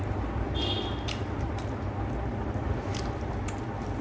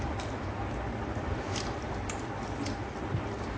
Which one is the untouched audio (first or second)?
first